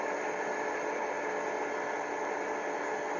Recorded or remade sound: recorded